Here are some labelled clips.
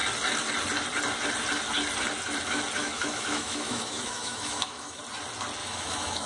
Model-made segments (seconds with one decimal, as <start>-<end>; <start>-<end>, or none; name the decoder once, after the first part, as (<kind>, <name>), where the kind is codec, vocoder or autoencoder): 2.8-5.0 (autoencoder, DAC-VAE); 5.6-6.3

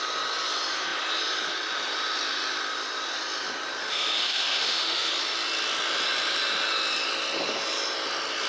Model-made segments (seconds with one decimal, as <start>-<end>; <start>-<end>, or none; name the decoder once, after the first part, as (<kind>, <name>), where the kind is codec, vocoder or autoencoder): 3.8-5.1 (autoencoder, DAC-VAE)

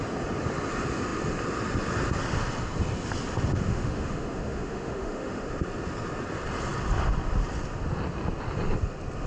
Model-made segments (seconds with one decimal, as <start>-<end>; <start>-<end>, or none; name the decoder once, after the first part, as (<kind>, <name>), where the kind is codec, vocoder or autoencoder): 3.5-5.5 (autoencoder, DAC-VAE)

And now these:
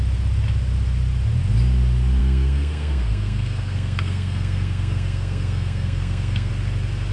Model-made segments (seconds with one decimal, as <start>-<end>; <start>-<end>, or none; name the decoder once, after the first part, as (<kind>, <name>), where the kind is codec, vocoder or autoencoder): 2.2-6.5 (codec, SNAC)

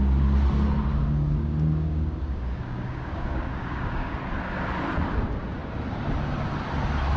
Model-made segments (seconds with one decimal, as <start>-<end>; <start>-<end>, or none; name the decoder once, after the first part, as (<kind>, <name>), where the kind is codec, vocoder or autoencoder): 0.9-4.2 (codec, DAC)

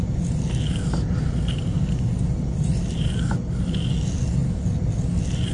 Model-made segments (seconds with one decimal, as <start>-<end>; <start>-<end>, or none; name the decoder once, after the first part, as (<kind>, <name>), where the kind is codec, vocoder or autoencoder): none